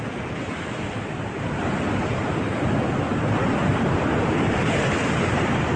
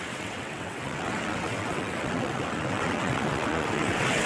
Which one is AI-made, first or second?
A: second